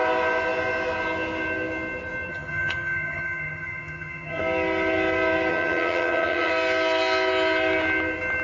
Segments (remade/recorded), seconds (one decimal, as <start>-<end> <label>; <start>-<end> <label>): 0.0-2.3 recorded; 2.3-4.4 remade; 4.4-5.5 recorded; 5.5-6.5 remade; 6.5-8.4 recorded